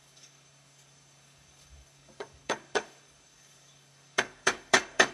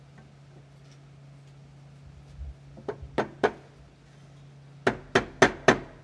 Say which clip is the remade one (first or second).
first